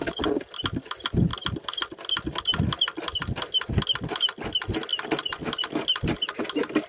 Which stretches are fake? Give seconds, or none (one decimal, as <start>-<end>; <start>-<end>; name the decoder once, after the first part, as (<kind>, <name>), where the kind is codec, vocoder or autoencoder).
none